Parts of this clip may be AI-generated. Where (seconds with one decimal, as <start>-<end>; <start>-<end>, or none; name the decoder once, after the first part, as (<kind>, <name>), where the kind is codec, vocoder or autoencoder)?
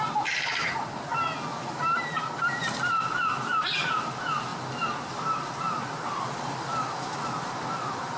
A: none